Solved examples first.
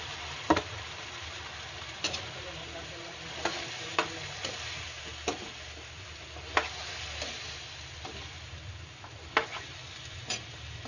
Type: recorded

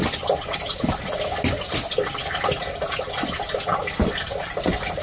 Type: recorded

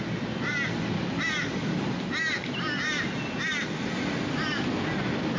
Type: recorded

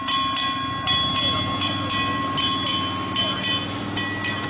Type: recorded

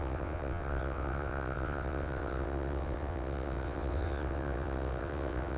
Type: remade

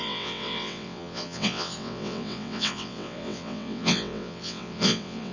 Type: remade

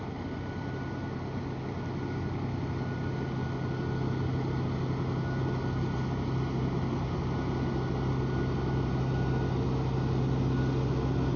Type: recorded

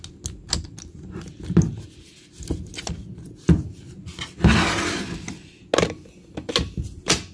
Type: recorded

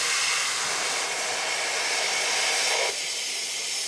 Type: recorded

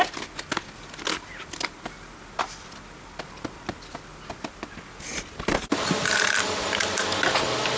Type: recorded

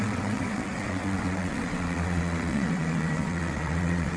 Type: remade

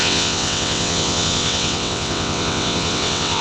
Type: remade